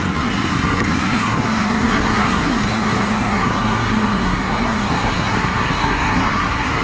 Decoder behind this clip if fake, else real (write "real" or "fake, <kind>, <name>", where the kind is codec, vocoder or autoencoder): fake, codec, SNAC